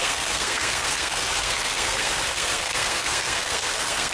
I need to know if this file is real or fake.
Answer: fake